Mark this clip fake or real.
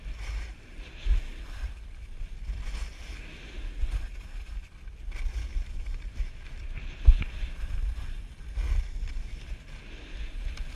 real